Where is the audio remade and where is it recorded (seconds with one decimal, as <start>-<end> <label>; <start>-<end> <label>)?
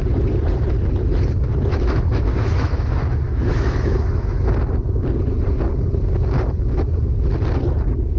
0.0-1.7 recorded; 1.7-4.5 remade; 4.5-8.2 recorded